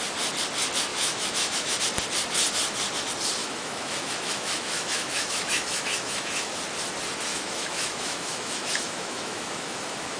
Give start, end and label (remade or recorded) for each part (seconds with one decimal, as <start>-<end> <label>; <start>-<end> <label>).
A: 0.0-0.9 recorded; 0.9-1.8 remade; 1.8-3.4 recorded; 3.4-6.5 remade; 6.5-7.3 recorded; 7.3-10.2 remade